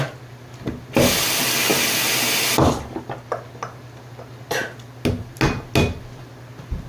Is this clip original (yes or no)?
yes